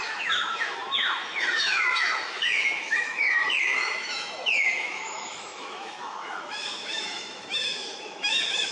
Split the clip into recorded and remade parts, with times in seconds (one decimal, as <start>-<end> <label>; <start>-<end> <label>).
0.0-8.7 remade